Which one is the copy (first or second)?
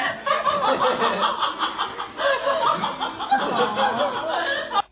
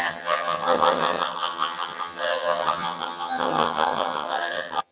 second